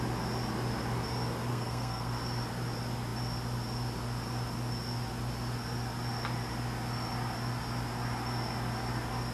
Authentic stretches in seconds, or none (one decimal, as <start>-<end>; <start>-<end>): 0.0-1.5; 2.1-9.3